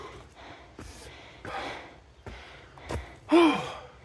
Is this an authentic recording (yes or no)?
yes